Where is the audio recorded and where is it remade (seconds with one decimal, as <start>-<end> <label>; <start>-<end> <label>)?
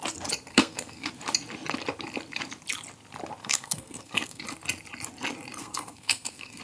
0.0-0.5 recorded; 0.5-1.1 remade; 1.1-3.4 recorded; 3.4-4.4 remade; 4.4-5.6 recorded; 5.6-6.6 remade